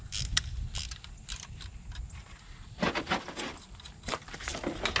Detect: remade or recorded recorded